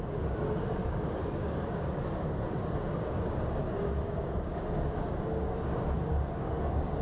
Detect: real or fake fake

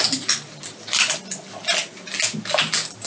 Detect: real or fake real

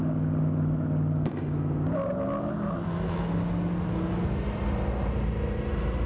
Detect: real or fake real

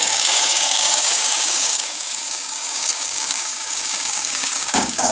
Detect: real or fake fake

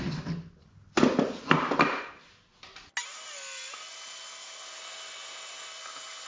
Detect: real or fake real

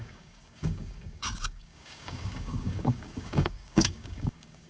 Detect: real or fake fake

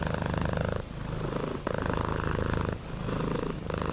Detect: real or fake real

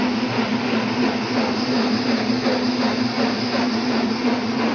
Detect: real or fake real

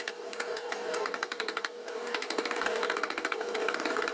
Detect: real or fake fake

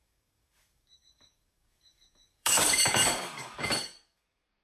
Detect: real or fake fake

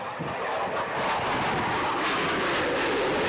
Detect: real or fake real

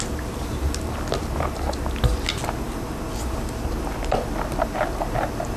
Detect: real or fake real